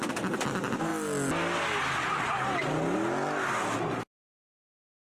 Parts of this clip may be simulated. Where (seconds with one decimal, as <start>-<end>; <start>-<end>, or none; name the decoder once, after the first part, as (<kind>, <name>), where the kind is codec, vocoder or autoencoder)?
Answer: none